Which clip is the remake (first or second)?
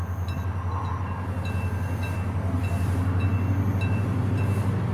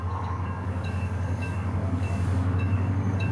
second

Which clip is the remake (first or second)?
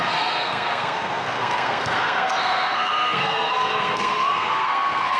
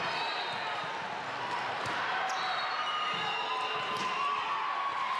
first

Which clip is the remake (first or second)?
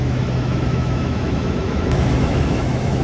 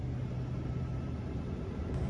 first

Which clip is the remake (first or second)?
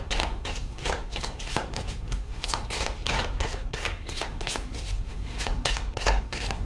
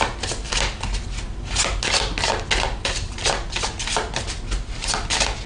first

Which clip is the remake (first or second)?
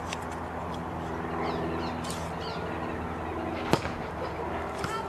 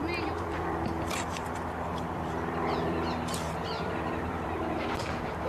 second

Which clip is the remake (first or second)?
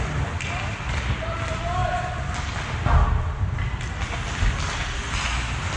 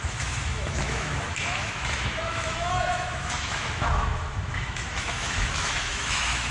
second